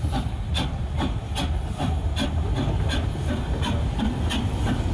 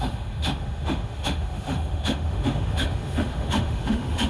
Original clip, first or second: first